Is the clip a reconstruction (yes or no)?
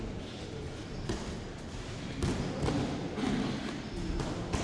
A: no